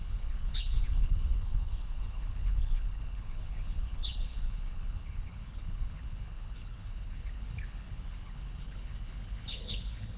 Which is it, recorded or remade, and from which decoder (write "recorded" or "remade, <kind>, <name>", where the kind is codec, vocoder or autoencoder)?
remade, codec, HILCodec